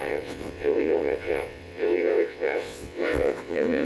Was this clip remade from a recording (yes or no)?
yes